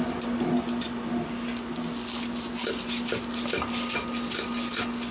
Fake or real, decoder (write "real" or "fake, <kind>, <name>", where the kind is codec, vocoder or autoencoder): real